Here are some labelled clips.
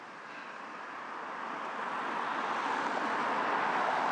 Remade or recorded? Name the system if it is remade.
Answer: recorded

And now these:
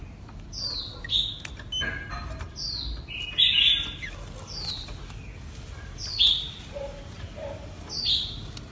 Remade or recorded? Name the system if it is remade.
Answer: recorded